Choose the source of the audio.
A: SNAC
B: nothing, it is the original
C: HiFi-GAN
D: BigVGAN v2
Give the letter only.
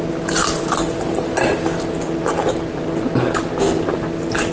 B